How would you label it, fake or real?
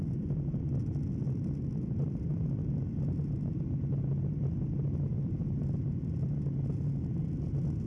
real